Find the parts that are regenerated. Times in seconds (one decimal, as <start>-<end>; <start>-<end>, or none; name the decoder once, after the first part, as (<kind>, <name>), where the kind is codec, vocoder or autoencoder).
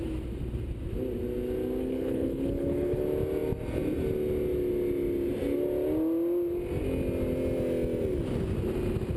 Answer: 1.8-3.0 (codec, HILCodec)